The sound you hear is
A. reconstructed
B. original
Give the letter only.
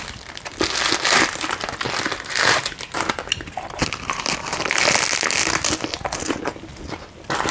B